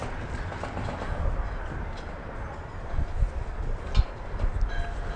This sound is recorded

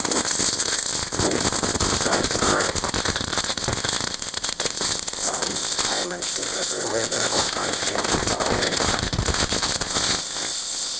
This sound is remade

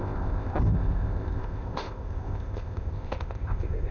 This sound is remade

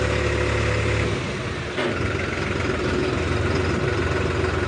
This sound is recorded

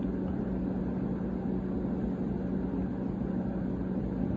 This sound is recorded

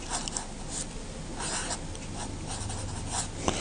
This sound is recorded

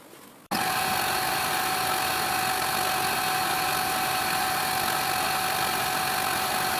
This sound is recorded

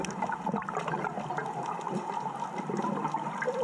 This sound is recorded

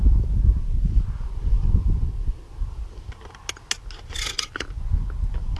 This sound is recorded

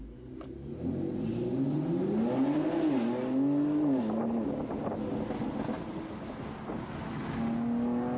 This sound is recorded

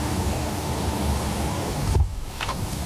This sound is remade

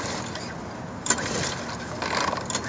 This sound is recorded